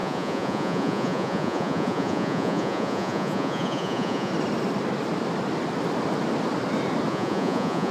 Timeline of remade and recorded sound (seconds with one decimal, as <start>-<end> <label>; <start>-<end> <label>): 0.0-4.3 remade; 4.3-7.1 recorded; 7.1-7.9 remade